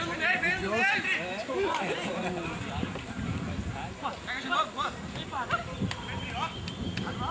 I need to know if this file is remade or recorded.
recorded